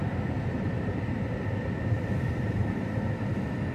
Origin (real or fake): fake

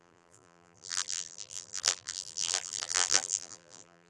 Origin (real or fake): fake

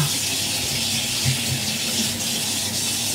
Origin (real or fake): real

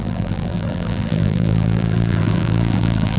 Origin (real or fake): fake